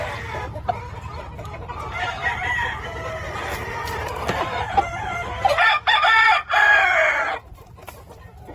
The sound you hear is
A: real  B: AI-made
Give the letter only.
B